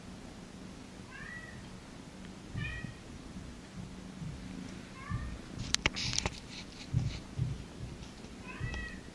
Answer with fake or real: real